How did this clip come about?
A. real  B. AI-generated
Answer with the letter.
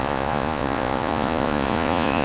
B